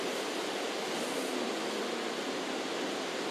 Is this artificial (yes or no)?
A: no